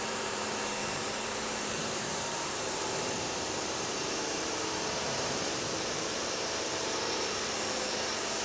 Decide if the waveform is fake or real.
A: fake